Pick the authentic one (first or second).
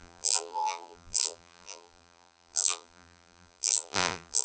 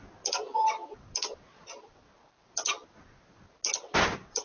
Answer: second